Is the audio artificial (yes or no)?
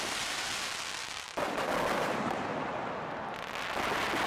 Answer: no